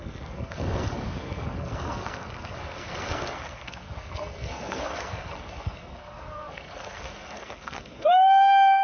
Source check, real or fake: fake